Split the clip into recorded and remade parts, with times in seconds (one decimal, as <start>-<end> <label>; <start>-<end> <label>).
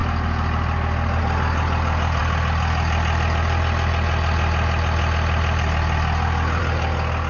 0.0-7.3 recorded